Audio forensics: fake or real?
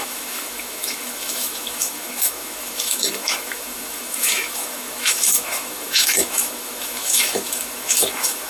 fake